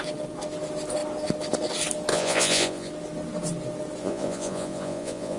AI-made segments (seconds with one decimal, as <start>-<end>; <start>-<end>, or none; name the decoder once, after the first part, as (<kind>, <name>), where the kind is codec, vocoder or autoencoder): 2.1-2.9 (vocoder, Vocos); 4.0-5.4